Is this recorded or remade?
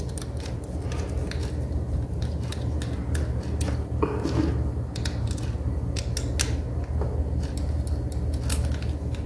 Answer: recorded